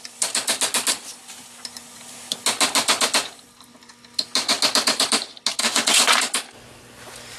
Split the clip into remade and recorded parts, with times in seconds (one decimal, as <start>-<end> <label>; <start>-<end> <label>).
0.0-5.6 recorded; 5.6-6.2 remade; 6.2-7.4 recorded